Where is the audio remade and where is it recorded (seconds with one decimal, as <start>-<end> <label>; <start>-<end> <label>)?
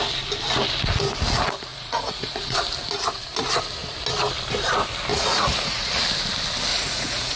0.0-1.7 recorded; 1.7-2.6 remade; 2.6-5.1 recorded; 5.1-5.9 remade; 5.9-6.7 recorded; 6.7-7.4 remade